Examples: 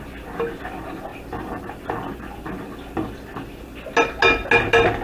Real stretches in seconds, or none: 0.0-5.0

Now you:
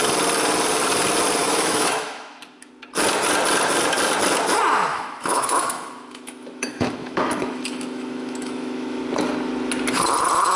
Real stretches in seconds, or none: 0.0-1.4; 2.7-4.9; 9.0-10.6

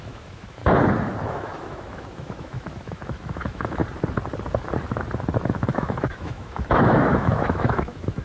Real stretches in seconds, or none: 0.6-1.3; 3.8-5.6